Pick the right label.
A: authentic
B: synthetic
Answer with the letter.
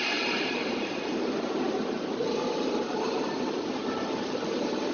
B